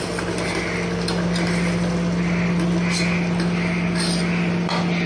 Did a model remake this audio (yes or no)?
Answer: no